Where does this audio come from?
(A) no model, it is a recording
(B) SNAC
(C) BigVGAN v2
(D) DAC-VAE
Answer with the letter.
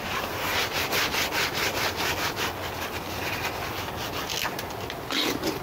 A